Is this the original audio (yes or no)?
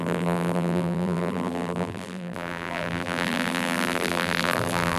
no